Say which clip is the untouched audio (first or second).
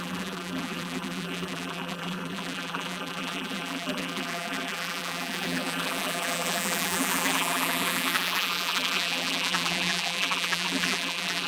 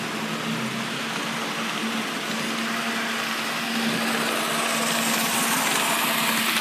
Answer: second